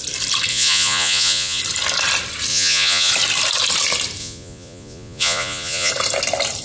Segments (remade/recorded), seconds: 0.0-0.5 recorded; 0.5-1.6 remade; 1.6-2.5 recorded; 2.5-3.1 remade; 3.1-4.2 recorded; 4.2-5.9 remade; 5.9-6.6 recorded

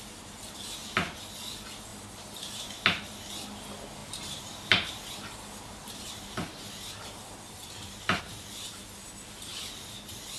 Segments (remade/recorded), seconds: 0.0-1.9 recorded; 1.9-2.7 remade; 2.7-4.0 recorded; 4.0-8.2 remade; 8.2-9.0 recorded; 9.0-9.7 remade; 9.7-10.4 recorded

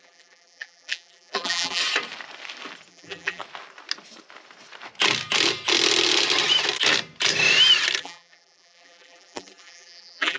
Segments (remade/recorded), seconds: 0.0-1.8 remade; 1.8-2.9 recorded; 2.9-3.4 remade; 3.4-8.0 recorded; 8.0-10.4 remade

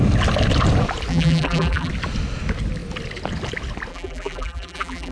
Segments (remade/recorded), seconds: 0.0-1.1 recorded; 1.1-1.9 remade; 1.9-3.9 recorded; 3.9-5.1 remade

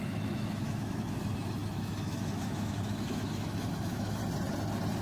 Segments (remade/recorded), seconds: 0.0-4.2 remade; 4.2-5.0 recorded

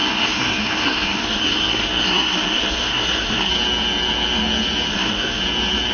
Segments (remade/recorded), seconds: 0.0-3.5 remade; 3.5-4.9 recorded; 4.9-5.4 remade; 5.4-5.9 recorded